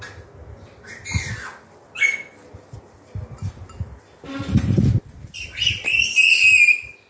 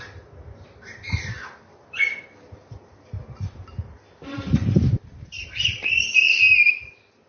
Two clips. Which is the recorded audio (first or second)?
first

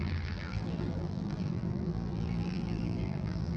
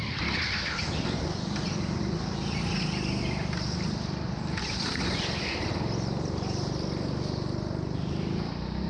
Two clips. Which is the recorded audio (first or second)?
second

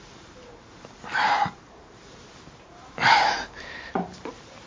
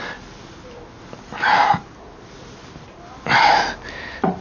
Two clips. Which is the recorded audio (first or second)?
second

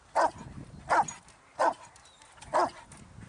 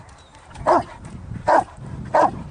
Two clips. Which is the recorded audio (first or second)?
first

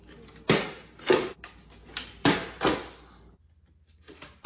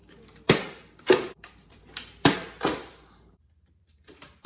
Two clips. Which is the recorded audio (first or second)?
first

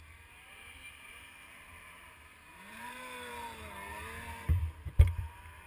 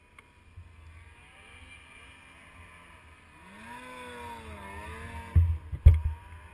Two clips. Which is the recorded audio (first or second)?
second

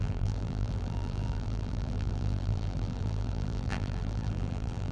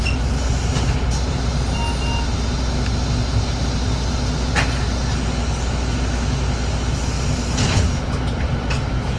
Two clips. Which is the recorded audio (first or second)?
second